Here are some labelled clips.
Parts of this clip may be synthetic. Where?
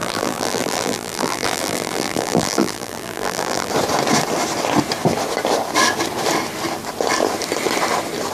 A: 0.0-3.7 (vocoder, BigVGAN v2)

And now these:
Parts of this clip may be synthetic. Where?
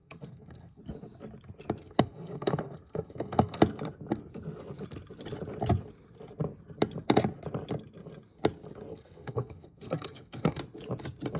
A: 0.0-0.8 (codec, SNAC); 1.8-3.6; 8.9-10.6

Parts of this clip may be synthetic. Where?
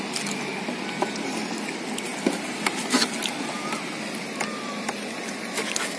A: none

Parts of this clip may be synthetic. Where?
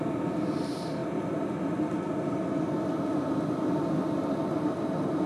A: none